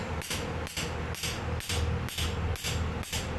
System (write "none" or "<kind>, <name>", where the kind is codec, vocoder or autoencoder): none